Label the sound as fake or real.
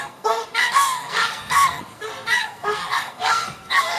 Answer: fake